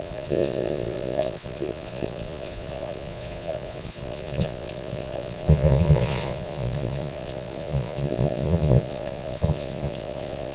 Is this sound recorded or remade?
remade